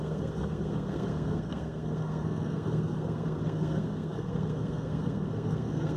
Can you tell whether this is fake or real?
fake